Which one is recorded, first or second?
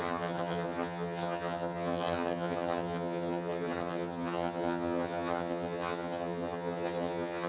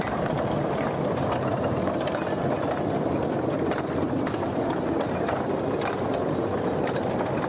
second